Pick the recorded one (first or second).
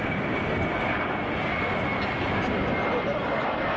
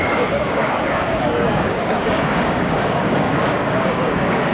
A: first